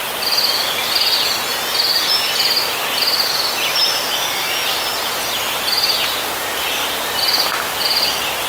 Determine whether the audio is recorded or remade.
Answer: recorded